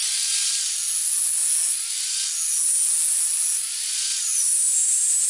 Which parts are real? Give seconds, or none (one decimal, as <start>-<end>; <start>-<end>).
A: 0.0-5.3